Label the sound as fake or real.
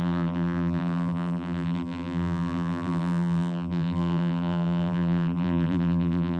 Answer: fake